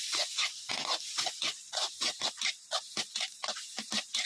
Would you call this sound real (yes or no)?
yes